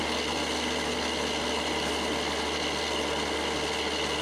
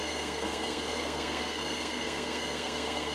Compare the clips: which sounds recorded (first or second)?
first